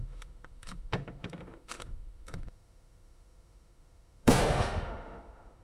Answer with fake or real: fake